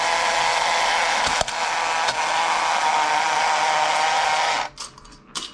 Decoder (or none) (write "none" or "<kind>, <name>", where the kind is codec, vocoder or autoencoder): none